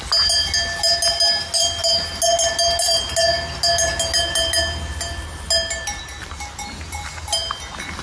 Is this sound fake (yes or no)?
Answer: no